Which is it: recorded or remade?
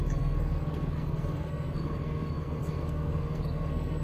remade